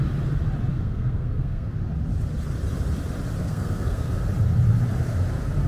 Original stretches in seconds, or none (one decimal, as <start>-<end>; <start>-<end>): 0.0-0.7; 1.7-3.4; 4.2-5.7

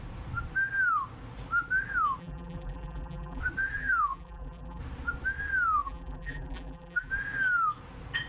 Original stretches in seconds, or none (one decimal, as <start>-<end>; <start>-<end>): 0.0-2.2; 3.4-3.8; 4.8-5.8; 7.1-8.3